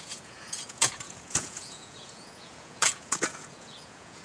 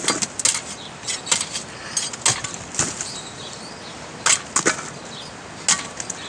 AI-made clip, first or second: first